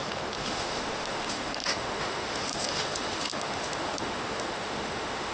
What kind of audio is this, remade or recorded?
remade